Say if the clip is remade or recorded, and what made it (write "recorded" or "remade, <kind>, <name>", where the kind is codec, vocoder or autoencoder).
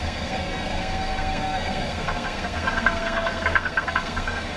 remade, codec, SNAC